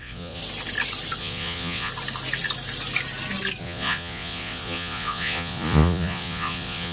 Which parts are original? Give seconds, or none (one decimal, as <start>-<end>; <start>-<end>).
0.4-1.2; 1.9-3.6